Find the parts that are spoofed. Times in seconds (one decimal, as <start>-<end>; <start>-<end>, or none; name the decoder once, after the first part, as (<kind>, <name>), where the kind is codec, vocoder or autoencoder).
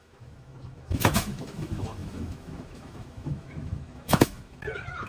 0.0-5.1 (autoencoder, DAC-VAE)